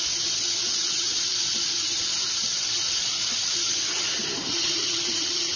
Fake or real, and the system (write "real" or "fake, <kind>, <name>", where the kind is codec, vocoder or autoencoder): real